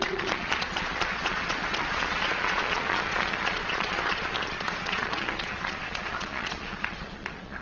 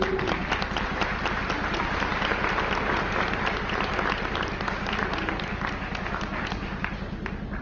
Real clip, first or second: second